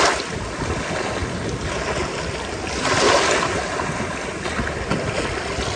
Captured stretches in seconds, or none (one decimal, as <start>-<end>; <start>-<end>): 0.0-5.8